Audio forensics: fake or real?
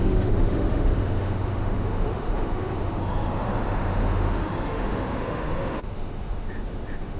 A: fake